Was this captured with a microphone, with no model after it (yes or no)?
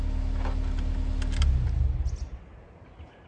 yes